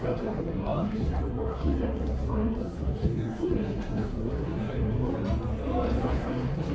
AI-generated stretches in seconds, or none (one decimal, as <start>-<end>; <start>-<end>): 0.0-5.1; 6.0-6.7